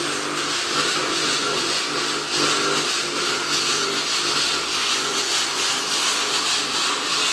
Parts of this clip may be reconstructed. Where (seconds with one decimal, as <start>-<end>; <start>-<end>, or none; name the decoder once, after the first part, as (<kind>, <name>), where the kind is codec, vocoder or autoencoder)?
1.0-1.8 (vocoder, Vocos); 4.8-5.8